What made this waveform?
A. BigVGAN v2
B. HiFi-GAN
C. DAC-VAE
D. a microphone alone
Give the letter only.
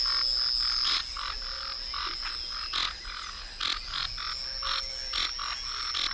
D